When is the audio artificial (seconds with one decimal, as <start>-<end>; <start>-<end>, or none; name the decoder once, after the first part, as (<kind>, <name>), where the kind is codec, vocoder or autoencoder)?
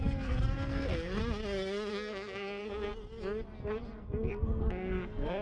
0.0-1.2 (codec, SNAC); 1.9-2.9; 4.0-5.4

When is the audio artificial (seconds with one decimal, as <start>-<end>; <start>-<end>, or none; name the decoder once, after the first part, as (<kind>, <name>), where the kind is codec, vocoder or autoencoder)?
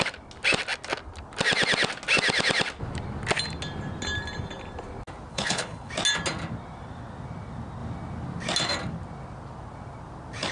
5.3-5.9 (codec, HILCodec)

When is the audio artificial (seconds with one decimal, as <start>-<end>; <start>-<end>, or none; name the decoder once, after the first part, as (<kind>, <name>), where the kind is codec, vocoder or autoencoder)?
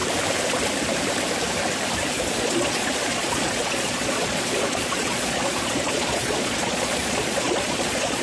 2.1-8.2 (vocoder, Vocos)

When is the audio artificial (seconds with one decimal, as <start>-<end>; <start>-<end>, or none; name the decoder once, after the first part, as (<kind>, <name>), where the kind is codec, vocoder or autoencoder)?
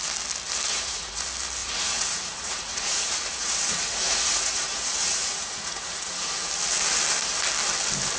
0.7-1.2 (vocoder, Vocos); 1.6-6.5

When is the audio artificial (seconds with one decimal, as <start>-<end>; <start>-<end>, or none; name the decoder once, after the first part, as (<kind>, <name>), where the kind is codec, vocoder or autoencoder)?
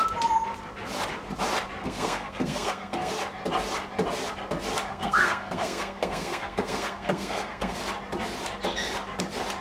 1.8-3.1 (codec, SNAC); 4.9-7.8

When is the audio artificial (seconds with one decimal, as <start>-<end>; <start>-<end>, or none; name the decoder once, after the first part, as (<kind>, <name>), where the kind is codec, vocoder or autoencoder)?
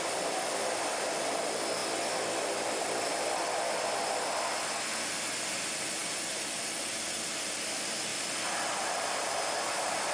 8.1-9.1 (vocoder, BigVGAN v2)